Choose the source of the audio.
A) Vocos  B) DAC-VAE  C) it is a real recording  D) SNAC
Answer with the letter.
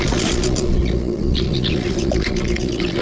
A